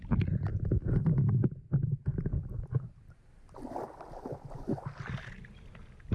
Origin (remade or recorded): recorded